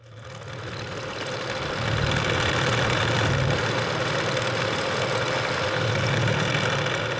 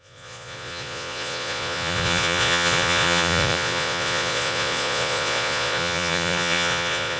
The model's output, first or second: second